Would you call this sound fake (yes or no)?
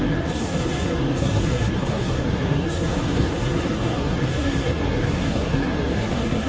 yes